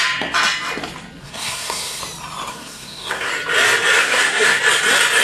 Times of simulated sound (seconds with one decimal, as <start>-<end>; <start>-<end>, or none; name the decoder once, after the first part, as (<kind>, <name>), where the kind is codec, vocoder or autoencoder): 1.2-2.0 (codec, SNAC); 2.5-3.3; 4.0-4.6